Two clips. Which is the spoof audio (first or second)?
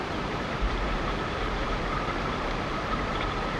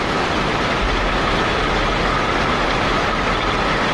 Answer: first